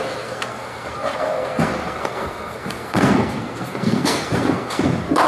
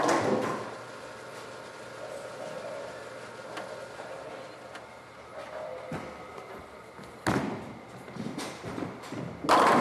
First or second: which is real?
second